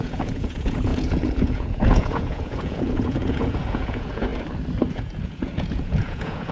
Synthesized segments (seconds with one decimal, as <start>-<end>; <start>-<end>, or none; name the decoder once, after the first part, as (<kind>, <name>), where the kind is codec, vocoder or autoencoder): 0.0-4.3 (vocoder, Vocos); 4.9-6.5